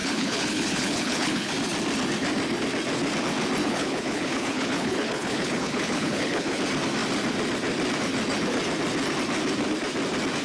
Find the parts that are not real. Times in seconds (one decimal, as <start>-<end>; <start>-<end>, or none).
0.0-1.5; 3.6-6.6